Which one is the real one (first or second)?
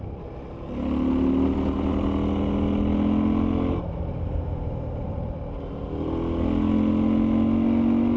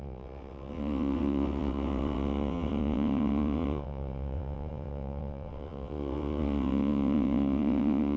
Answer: first